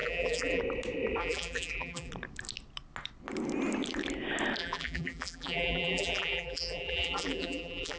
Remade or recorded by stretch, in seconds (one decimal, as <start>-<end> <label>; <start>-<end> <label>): 0.0-0.6 remade; 0.6-1.2 recorded; 1.2-2.1 remade; 2.1-4.6 recorded; 4.6-8.0 remade